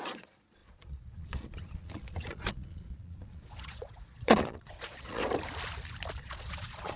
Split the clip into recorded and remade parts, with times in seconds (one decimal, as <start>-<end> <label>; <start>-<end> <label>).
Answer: 0.0-5.2 remade; 5.2-6.2 recorded; 6.2-7.0 remade